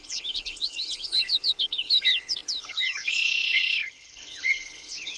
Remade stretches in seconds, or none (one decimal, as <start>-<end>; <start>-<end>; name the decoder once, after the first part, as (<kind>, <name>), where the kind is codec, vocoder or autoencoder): 0.0-5.2 (codec, HILCodec)